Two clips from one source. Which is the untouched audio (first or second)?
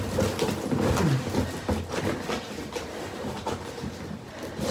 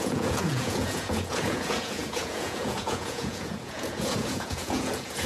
first